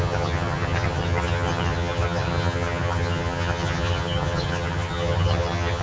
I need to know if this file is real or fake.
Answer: fake